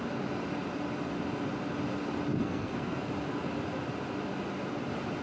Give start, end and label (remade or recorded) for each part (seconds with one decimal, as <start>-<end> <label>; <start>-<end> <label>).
0.0-2.3 recorded; 2.3-3.1 remade; 3.1-5.2 recorded